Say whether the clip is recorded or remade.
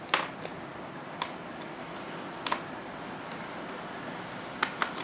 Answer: recorded